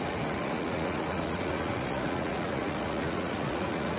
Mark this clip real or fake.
fake